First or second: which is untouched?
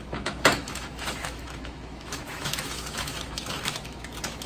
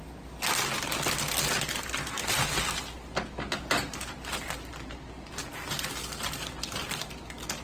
second